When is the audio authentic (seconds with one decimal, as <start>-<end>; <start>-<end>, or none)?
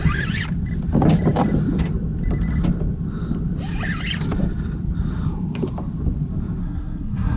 0.0-6.6